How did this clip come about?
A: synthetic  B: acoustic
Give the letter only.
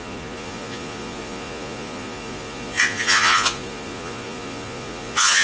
A